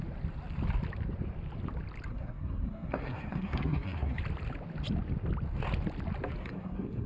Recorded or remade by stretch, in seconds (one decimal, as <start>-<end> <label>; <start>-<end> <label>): 0.0-2.1 recorded; 2.1-4.2 remade; 4.2-6.4 recorded; 6.4-7.1 remade